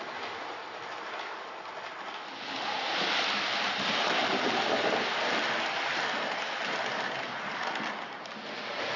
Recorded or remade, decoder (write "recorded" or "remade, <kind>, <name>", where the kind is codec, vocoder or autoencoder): recorded